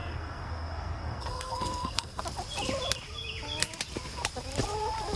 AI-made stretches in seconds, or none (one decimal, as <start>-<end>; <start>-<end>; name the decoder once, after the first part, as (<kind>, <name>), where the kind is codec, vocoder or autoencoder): 0.0-2.2 (codec, SNAC)